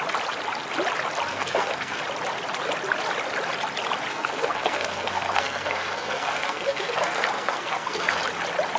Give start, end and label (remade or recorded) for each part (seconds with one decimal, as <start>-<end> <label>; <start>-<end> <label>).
0.0-1.3 recorded; 1.3-2.0 remade; 2.0-4.1 recorded; 4.1-8.2 remade; 8.2-8.8 recorded